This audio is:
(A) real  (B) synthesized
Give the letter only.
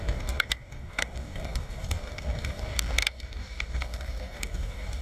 B